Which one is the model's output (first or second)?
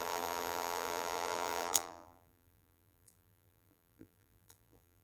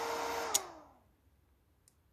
first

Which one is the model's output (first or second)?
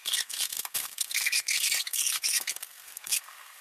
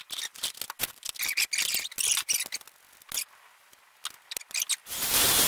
first